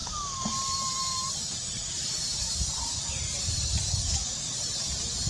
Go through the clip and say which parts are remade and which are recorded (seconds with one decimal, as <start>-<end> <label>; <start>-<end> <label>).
0.0-3.8 recorded; 3.8-4.5 remade; 4.5-5.3 recorded